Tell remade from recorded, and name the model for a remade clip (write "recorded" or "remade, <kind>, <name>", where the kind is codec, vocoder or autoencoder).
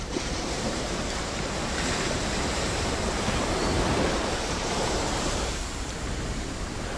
remade, vocoder, BigVGAN v2